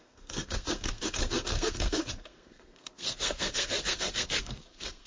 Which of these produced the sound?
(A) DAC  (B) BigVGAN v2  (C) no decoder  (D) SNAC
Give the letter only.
D